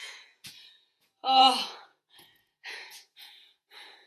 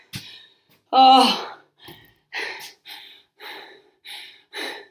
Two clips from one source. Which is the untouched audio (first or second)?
second